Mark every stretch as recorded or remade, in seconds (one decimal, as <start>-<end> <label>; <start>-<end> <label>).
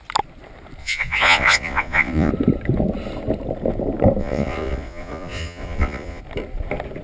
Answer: 0.0-0.8 recorded; 0.8-2.3 remade; 2.3-4.2 recorded; 4.2-6.2 remade; 6.2-7.0 recorded